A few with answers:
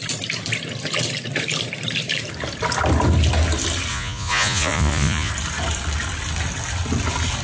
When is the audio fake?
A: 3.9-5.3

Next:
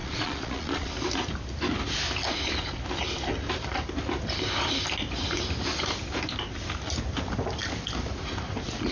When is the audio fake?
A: 0.0-0.9

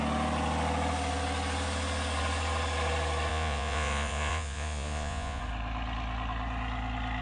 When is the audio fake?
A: 3.3-5.4

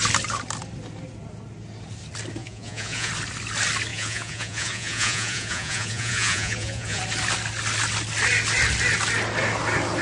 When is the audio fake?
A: 2.4-3.1; 3.9-7.0

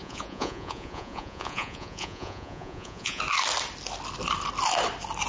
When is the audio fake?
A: 0.0-3.2

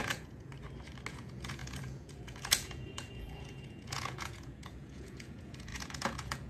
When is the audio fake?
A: 0.0-0.5; 1.1-6.5

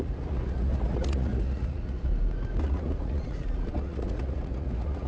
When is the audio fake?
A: 0.0-2.1; 2.6-5.1

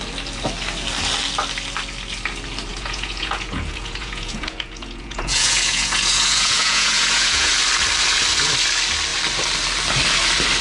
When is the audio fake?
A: 2.7-7.5